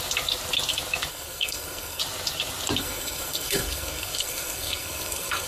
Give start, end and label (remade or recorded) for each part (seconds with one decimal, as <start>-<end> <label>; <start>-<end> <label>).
0.0-1.1 recorded; 1.1-2.0 remade; 2.0-2.8 recorded; 2.8-5.5 remade